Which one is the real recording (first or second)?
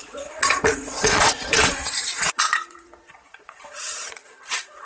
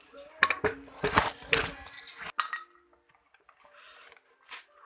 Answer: second